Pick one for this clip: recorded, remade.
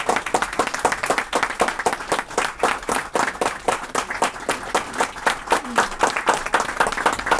recorded